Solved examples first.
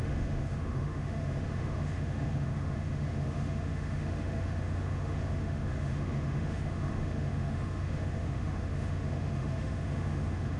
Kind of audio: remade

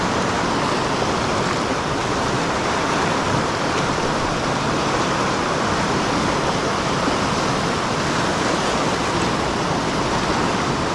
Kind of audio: recorded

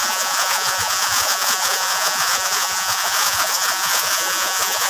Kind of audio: remade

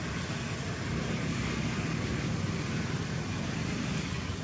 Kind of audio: recorded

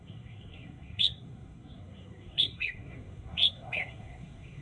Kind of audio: remade